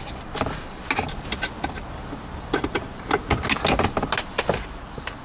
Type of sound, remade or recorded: recorded